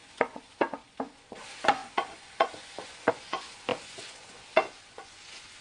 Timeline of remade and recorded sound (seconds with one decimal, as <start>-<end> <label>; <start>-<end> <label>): 0.0-5.6 remade